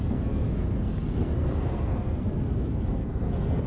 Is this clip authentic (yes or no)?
no